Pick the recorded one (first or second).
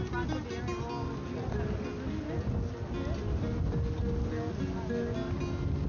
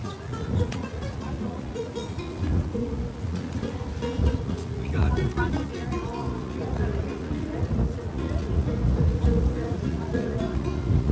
first